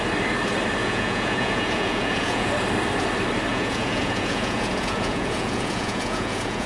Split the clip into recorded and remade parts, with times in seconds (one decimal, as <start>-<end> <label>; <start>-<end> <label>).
0.0-0.8 recorded; 0.8-2.5 remade; 2.5-3.5 recorded; 3.5-6.7 remade